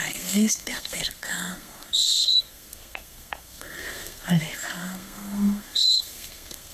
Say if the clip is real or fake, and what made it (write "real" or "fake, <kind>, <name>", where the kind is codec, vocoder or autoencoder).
fake, codec, SNAC